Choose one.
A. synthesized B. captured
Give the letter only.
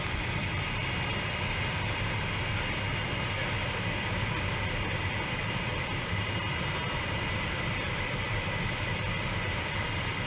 A